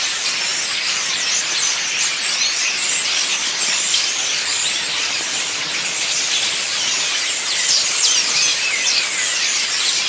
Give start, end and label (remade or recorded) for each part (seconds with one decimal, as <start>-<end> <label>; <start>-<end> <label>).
0.0-3.3 recorded; 3.3-6.5 remade; 6.5-10.1 recorded